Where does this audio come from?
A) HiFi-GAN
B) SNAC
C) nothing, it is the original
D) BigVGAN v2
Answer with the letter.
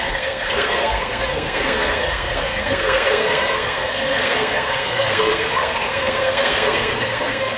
B